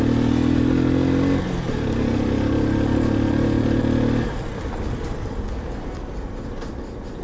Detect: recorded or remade recorded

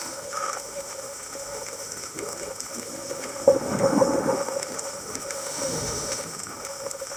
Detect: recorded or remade remade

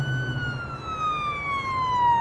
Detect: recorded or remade recorded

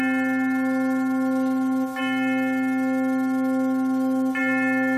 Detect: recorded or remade recorded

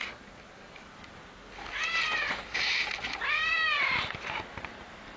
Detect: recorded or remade recorded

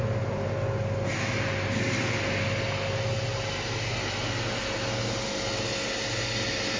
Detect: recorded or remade recorded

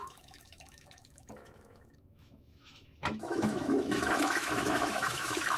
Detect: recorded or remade remade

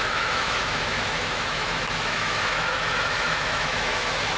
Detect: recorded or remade remade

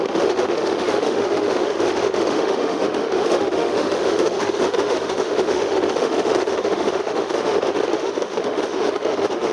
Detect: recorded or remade remade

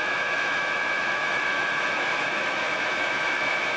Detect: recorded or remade remade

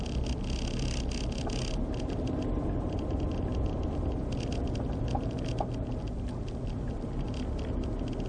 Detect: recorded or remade recorded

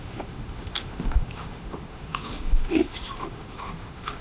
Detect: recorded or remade remade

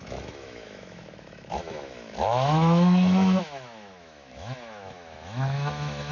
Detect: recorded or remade remade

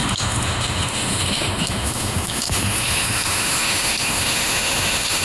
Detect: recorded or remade remade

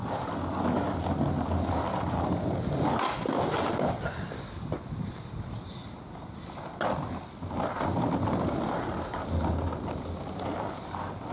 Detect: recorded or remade recorded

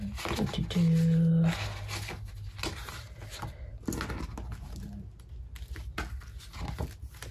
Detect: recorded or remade recorded